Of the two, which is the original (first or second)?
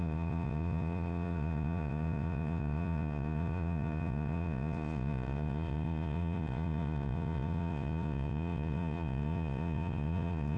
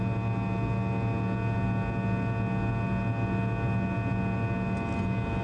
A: second